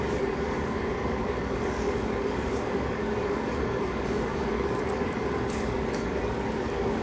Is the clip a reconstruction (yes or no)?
yes